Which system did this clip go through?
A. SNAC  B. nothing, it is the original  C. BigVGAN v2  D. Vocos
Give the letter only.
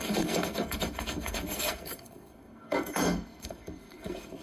A